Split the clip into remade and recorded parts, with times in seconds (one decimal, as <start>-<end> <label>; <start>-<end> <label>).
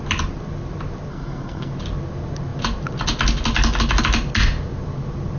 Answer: 0.0-1.1 recorded; 1.1-1.7 remade; 1.7-5.4 recorded